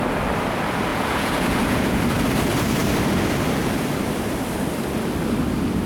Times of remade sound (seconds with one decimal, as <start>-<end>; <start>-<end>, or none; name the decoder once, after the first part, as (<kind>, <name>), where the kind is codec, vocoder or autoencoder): 0.9-2.0 (vocoder, Vocos)